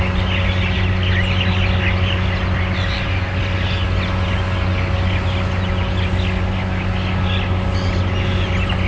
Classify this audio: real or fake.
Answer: real